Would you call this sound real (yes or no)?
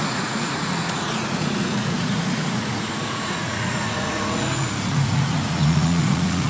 no